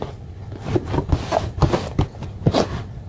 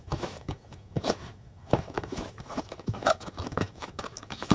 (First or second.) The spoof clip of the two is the second